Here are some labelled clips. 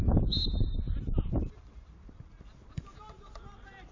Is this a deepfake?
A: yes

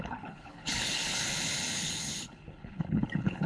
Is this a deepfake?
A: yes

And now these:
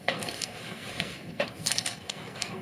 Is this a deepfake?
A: yes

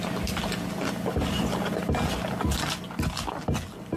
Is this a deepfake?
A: no